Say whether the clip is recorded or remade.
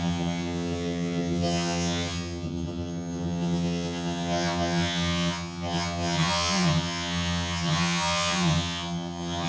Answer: remade